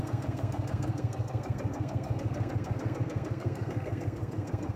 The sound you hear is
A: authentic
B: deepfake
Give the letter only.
B